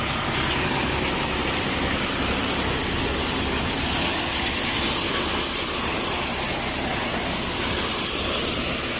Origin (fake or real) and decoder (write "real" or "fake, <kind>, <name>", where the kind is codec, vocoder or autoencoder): real